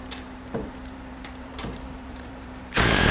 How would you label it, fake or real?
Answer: fake